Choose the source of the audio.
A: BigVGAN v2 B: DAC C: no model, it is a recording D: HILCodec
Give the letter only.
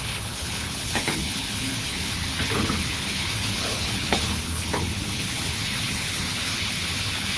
D